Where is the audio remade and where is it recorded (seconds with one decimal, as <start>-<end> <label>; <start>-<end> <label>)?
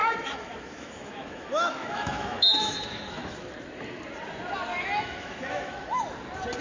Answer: 0.0-3.5 remade; 3.5-4.7 recorded; 4.7-6.0 remade; 6.0-6.6 recorded